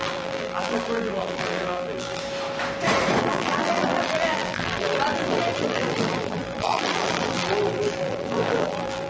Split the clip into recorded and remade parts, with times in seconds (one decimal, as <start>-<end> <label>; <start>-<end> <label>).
0.0-2.2 remade; 2.2-3.2 recorded; 3.2-9.1 remade